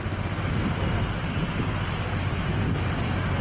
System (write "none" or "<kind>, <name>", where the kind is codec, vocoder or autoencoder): none